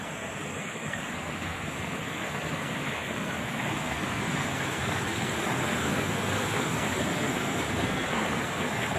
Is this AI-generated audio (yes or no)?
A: yes